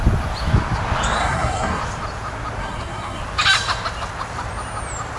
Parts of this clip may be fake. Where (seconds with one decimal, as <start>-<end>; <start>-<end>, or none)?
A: 1.2-1.8; 2.6-3.2